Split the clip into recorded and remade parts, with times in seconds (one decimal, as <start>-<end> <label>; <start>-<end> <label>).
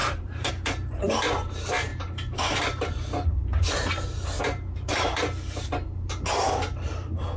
0.0-0.5 remade; 0.5-7.4 recorded